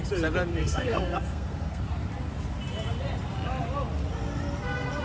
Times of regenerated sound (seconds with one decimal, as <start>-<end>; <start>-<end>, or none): 0.5-1.8